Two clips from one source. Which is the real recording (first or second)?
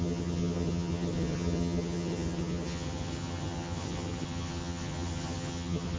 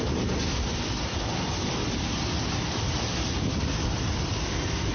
second